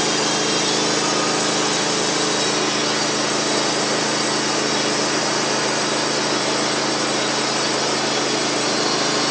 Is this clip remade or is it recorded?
recorded